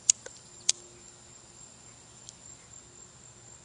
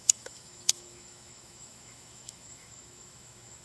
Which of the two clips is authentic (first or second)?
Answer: first